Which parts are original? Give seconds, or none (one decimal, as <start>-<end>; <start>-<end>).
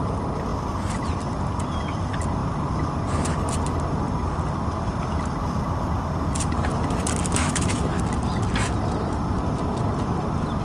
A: 0.0-7.4; 8.0-10.6